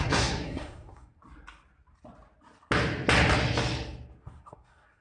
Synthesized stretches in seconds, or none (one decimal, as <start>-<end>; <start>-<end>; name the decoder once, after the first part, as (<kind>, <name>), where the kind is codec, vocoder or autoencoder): 0.0-1.2 (codec, SNAC); 4.2-5.0